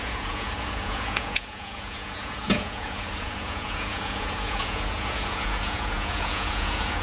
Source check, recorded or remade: remade